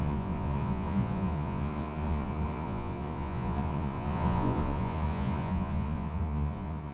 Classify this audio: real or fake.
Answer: fake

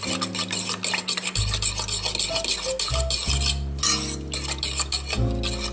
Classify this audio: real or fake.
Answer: real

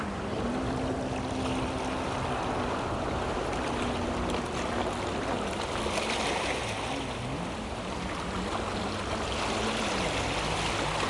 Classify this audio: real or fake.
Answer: real